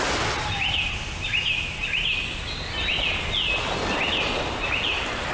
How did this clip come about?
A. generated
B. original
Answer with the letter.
B